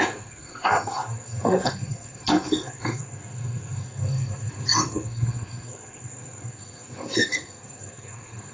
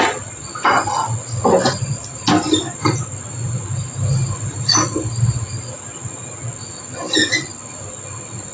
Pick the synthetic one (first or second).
first